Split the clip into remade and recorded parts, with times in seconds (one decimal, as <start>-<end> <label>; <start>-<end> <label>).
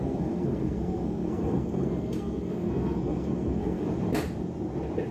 0.0-3.9 remade; 3.9-5.1 recorded